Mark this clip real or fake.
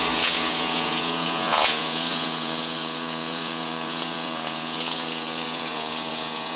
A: fake